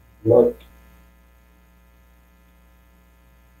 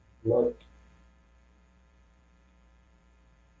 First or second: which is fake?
second